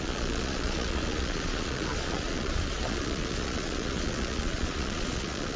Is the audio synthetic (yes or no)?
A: yes